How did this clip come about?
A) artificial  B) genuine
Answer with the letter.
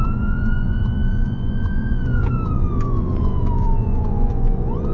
A